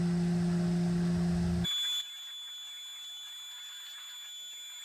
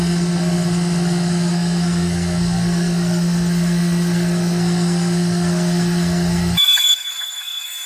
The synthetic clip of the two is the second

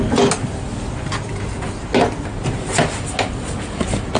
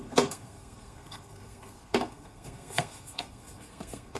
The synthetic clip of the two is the second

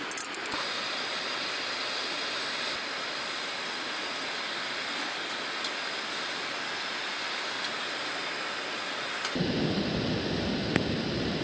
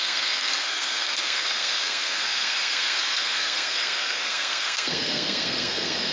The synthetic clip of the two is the second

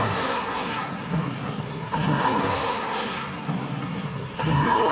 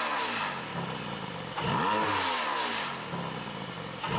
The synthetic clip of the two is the first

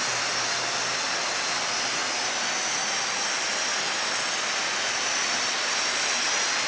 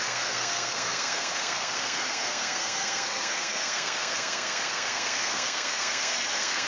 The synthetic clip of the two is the second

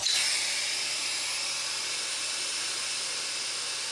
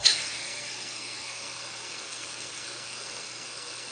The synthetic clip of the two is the second